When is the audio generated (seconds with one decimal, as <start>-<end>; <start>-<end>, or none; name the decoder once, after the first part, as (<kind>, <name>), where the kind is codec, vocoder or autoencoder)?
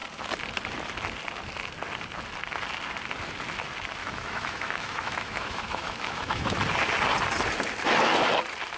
4.0-6.6 (autoencoder, DAC-VAE)